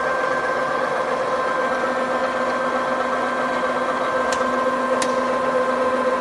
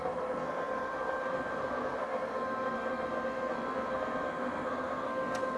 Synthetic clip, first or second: second